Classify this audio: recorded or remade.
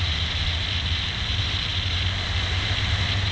recorded